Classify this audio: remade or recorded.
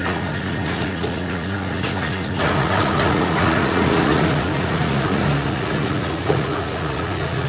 remade